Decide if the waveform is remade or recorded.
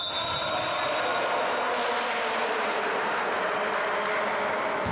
recorded